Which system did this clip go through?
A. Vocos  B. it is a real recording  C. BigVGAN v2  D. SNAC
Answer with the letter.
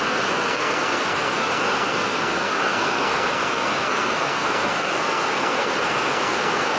D